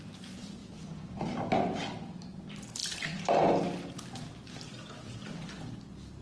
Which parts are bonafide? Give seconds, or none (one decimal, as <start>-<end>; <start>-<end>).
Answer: 0.0-6.2